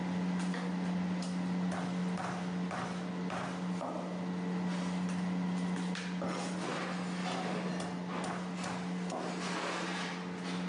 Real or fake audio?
real